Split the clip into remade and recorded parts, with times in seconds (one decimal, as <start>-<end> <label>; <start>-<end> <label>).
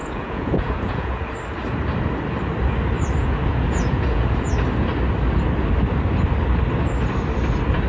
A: 0.0-1.3 remade; 1.3-3.2 recorded; 3.2-4.5 remade; 4.5-7.9 recorded